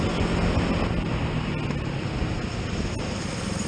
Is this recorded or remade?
recorded